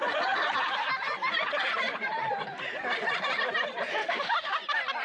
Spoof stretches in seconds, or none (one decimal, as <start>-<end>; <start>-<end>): 4.0-4.6

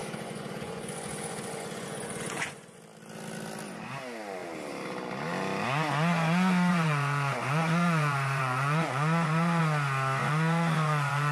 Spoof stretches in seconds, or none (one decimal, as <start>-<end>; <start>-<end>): 0.0-2.8; 6.7-9.6; 10.2-11.3